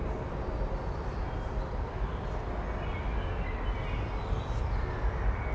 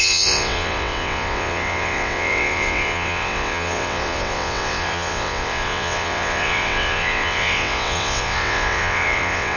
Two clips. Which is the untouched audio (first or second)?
first